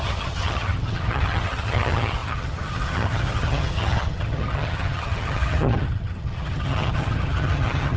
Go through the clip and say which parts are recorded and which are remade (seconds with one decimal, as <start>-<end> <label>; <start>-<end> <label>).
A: 0.0-8.0 remade